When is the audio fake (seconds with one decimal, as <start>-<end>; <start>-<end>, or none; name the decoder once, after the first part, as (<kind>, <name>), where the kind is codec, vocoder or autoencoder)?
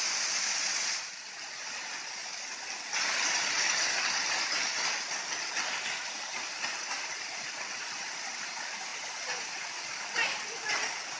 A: 8.9-9.6 (vocoder, BigVGAN v2)